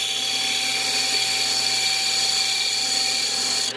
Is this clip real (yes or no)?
yes